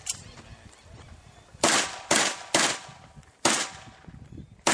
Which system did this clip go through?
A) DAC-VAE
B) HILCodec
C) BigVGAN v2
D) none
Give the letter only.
D